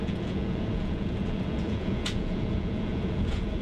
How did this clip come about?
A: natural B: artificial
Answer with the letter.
B